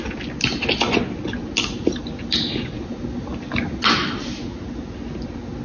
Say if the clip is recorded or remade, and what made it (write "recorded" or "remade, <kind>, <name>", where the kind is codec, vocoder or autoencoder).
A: recorded